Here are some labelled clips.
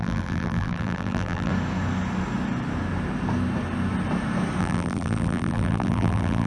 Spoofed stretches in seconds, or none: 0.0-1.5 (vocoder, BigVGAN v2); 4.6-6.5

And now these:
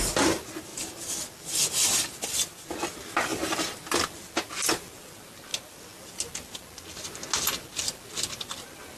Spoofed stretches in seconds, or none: 3.3-4.5 (vocoder, BigVGAN v2)

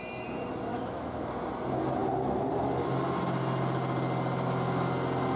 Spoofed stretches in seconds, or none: 0.7-1.3 (autoencoder, DAC-VAE)